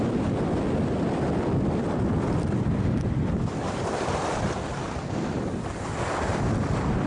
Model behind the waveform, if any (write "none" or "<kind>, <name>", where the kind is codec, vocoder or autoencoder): none